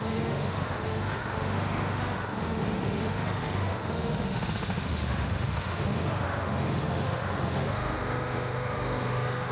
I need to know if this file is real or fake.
fake